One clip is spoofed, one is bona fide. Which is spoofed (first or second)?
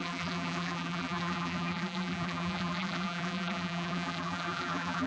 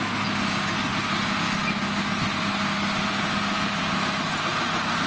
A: first